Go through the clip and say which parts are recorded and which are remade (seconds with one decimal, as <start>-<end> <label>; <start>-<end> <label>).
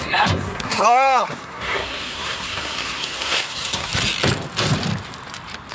0.0-3.9 remade; 3.9-5.7 recorded